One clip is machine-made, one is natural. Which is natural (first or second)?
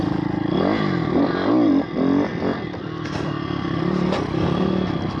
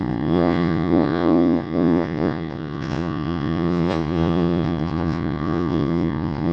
first